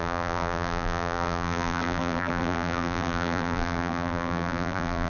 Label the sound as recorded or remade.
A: remade